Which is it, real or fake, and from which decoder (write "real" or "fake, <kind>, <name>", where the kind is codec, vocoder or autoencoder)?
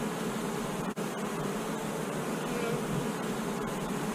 real